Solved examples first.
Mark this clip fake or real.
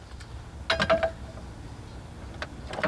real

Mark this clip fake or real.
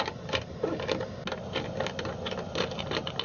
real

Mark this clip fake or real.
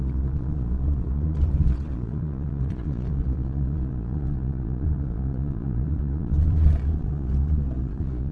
fake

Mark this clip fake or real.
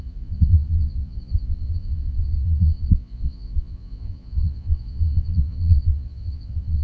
fake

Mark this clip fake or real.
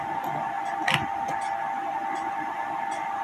real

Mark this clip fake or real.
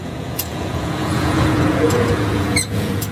fake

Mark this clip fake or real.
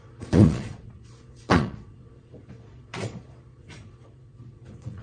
fake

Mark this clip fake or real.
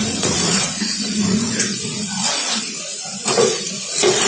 fake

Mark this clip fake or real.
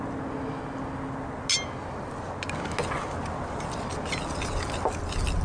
real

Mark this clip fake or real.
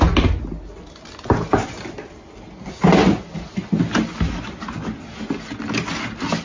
real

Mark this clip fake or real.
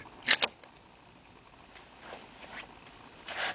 real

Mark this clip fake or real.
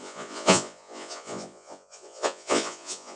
fake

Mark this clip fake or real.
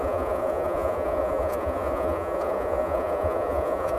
fake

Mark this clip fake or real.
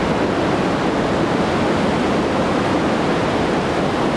real